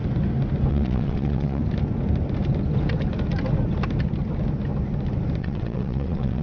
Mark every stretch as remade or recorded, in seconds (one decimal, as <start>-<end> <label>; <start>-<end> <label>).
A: 0.0-0.7 recorded; 0.7-1.6 remade; 1.6-5.4 recorded; 5.4-6.4 remade